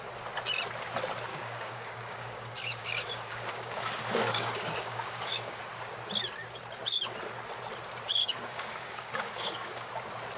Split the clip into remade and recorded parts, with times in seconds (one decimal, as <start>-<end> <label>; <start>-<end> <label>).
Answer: 0.0-1.3 recorded; 1.3-5.6 remade; 5.6-8.2 recorded; 8.2-9.9 remade; 9.9-10.4 recorded